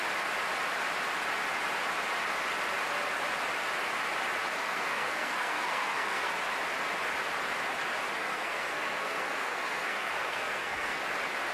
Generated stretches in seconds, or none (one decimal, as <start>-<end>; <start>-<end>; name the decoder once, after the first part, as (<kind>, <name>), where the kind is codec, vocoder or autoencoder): 4.5-6.3 (codec, SNAC); 8.2-11.0